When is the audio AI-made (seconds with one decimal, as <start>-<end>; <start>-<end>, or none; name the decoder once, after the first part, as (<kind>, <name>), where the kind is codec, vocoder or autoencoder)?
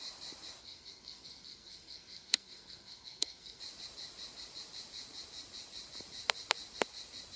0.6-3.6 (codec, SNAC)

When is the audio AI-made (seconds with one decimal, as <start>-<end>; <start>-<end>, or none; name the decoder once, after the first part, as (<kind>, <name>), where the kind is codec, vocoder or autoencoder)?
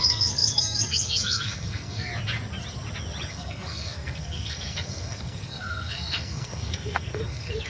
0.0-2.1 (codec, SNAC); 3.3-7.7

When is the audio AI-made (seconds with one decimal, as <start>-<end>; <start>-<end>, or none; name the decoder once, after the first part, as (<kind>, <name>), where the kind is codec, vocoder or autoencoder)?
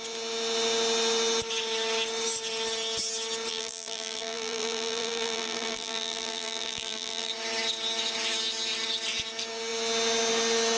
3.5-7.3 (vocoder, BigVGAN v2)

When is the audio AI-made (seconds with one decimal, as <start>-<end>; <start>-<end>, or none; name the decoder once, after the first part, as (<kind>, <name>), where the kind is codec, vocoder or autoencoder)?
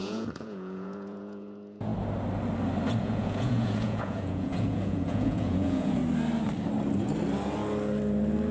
0.0-1.9 (vocoder, Vocos); 3.0-6.0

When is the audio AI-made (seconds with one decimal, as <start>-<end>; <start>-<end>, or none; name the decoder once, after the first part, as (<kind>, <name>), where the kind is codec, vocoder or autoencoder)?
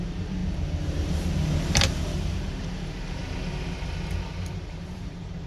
0.0-3.2 (vocoder, BigVGAN v2); 4.5-5.5